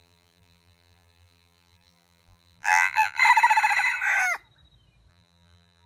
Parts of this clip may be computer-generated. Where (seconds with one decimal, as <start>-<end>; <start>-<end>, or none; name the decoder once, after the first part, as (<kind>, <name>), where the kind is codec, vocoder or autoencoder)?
0.0-3.2 (vocoder, BigVGAN v2); 5.1-5.9